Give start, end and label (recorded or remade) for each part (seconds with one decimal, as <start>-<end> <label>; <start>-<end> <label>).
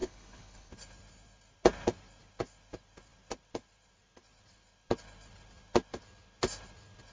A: 0.0-0.7 remade; 0.7-7.1 recorded